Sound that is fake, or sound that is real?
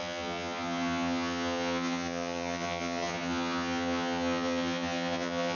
fake